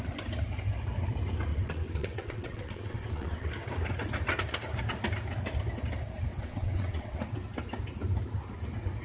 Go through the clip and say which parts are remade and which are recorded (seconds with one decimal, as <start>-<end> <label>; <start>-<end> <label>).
0.0-1.5 recorded; 1.5-3.5 remade; 3.5-6.3 recorded; 6.3-7.2 remade; 7.2-9.0 recorded